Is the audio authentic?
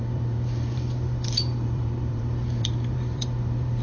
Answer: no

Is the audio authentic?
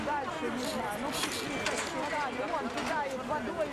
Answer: yes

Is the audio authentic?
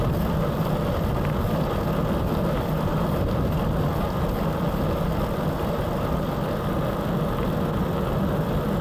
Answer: yes